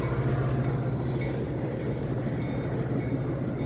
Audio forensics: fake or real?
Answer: real